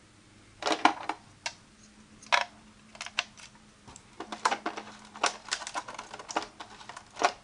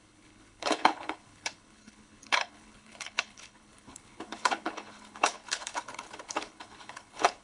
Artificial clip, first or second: second